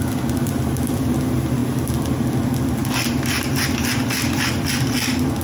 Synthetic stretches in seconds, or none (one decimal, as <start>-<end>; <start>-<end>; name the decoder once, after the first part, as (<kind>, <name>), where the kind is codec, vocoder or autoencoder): none